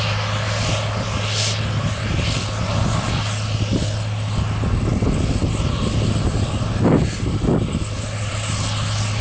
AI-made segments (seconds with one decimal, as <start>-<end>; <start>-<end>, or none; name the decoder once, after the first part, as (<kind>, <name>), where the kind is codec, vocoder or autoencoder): none